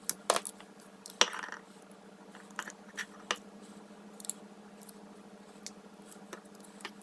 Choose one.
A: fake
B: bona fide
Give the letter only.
B